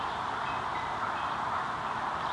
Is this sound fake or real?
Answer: real